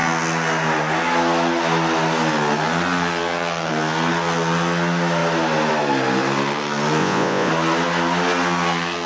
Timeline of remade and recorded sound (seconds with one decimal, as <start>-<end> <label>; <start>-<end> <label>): 0.0-7.0 recorded; 7.0-7.5 remade; 7.5-9.1 recorded